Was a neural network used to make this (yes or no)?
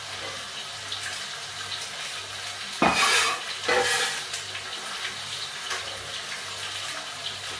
no